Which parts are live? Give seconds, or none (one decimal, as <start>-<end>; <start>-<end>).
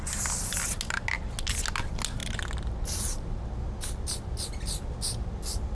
0.0-5.7